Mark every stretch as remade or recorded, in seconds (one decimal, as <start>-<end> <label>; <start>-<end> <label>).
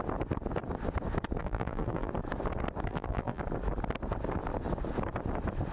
0.0-1.4 recorded; 1.4-2.1 remade; 2.1-2.9 recorded; 2.9-3.4 remade; 3.4-5.7 recorded